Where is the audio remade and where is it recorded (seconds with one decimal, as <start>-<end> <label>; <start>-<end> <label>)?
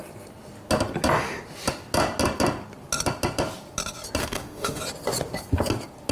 0.0-4.2 recorded; 4.2-4.8 remade; 4.8-6.1 recorded